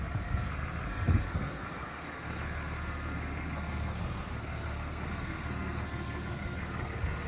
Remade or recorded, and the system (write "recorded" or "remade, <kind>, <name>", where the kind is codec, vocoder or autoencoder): remade, codec, SNAC